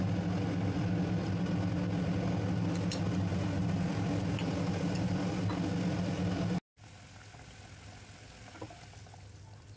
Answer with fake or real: real